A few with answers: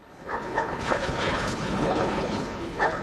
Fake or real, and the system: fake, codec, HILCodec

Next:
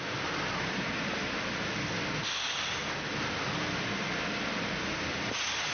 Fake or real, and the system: real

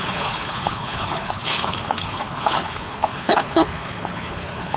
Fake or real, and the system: fake, codec, HILCodec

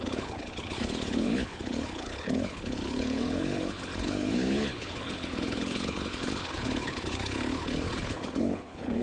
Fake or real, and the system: fake, codec, HILCodec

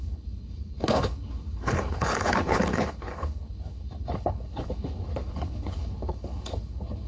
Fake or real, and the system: fake, codec, HILCodec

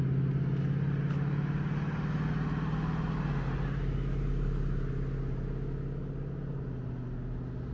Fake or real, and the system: real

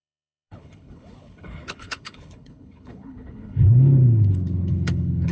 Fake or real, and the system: fake, codec, HILCodec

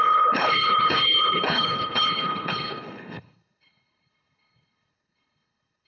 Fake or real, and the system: fake, codec, HILCodec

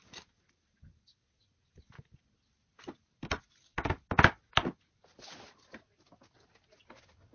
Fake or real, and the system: real